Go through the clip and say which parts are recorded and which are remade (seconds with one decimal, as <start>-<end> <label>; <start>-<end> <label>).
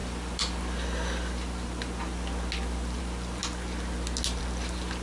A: 0.0-5.0 recorded